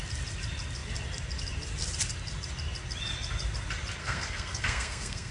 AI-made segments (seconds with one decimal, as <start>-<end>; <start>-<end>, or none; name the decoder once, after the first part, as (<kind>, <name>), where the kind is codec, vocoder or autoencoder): 4.0-5.3 (codec, SNAC)